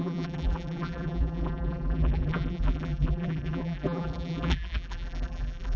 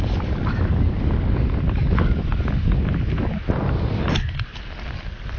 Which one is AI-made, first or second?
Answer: first